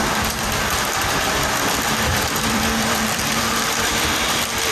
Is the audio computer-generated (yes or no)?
yes